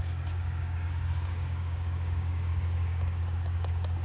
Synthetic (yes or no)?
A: yes